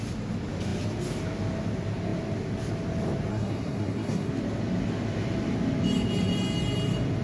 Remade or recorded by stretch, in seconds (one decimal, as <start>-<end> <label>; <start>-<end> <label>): 0.0-3.3 recorded; 3.3-4.3 remade; 4.3-7.2 recorded